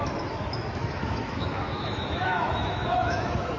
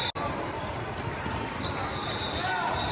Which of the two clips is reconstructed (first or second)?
first